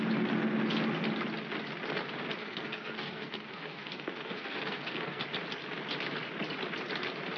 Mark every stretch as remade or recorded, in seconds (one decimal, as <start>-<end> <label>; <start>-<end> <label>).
0.0-2.4 recorded; 2.4-5.2 remade; 5.2-7.4 recorded